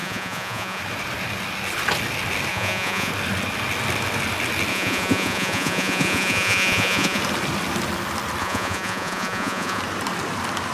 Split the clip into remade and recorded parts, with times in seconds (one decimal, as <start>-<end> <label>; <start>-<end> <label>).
0.0-0.8 remade; 0.8-2.5 recorded; 2.5-3.1 remade; 3.1-4.7 recorded; 4.7-7.2 remade; 7.2-8.4 recorded; 8.4-9.8 remade; 9.8-10.7 recorded